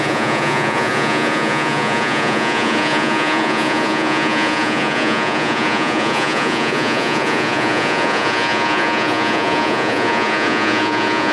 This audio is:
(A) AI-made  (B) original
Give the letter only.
A